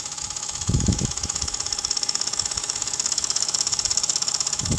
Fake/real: fake